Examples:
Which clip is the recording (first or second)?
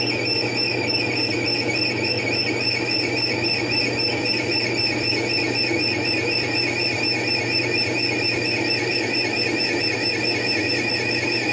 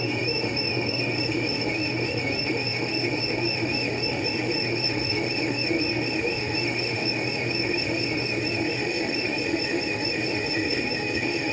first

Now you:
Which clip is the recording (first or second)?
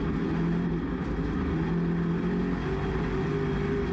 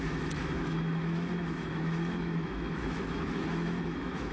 first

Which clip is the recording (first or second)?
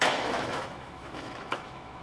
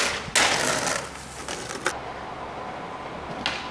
second